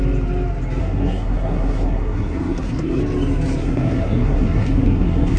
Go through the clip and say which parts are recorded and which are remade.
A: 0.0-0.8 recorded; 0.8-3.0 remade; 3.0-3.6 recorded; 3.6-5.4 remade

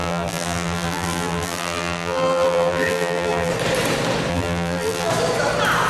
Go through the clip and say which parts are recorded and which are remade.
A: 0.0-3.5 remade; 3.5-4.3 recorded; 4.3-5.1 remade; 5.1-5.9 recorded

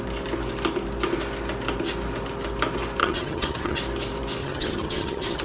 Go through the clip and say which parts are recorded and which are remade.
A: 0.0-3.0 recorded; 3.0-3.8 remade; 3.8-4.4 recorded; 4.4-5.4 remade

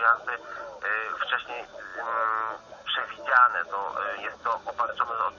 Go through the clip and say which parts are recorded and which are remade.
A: 0.0-5.4 recorded

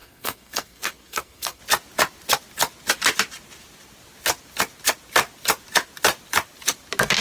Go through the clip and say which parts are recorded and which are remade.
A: 0.0-1.6 remade; 1.6-7.2 recorded